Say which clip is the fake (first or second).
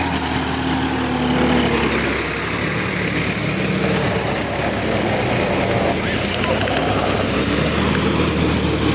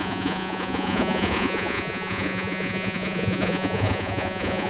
second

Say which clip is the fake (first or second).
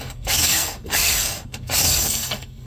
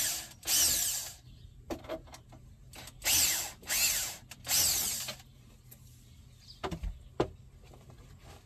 first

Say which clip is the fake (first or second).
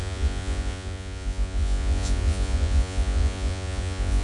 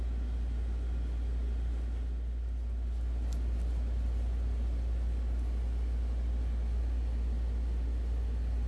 first